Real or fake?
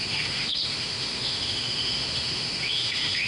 fake